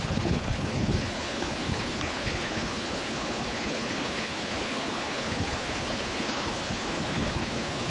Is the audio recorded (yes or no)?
no